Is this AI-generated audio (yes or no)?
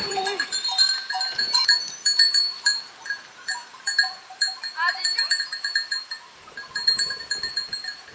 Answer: yes